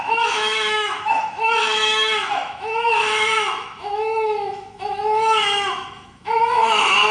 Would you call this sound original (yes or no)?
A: no